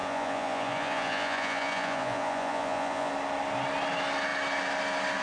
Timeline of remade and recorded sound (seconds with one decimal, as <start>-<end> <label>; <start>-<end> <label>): 0.0-3.1 remade; 3.1-5.2 recorded